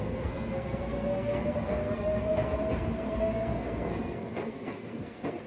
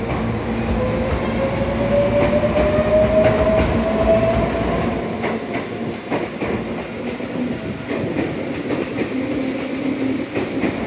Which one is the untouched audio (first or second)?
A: second